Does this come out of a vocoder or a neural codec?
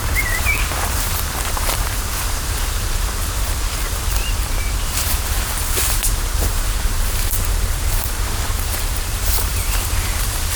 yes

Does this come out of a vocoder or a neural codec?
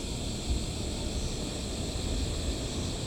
no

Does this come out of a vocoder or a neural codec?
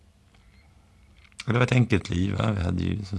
no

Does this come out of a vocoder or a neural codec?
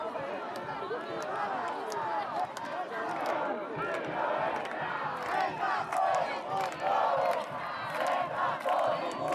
no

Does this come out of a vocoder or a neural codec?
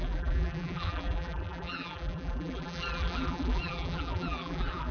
yes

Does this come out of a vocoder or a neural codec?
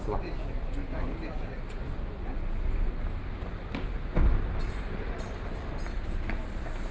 no